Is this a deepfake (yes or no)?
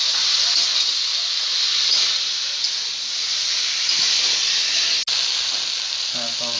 no